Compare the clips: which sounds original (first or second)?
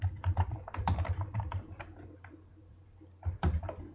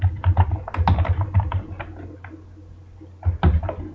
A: second